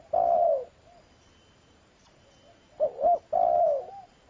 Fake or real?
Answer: real